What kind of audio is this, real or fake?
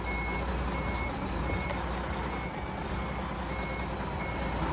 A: real